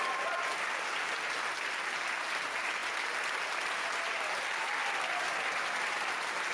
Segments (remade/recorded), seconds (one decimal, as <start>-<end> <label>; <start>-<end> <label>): 0.0-6.5 recorded